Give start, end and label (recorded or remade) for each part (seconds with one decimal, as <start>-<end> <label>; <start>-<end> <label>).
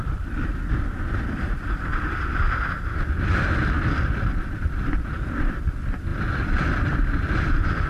0.0-1.9 remade; 1.9-2.7 recorded; 2.7-6.1 remade; 6.1-6.6 recorded; 6.6-7.9 remade